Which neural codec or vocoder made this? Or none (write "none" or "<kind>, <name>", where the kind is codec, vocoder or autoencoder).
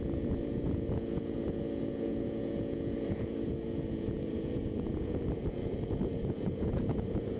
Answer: vocoder, Vocos